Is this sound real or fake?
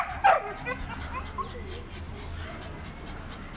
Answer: real